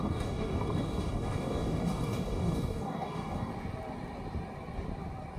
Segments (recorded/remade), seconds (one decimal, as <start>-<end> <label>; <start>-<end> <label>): 0.0-3.5 remade; 3.5-5.4 recorded